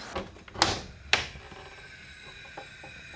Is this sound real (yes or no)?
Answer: yes